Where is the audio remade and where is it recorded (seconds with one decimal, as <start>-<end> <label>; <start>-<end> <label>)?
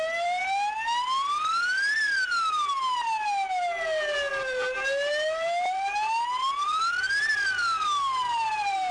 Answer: 0.0-8.9 recorded